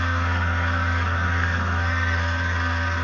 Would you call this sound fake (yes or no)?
yes